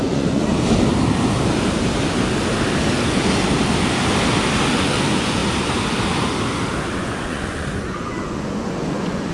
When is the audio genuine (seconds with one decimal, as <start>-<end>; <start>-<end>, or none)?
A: 0.5-4.7; 5.4-7.0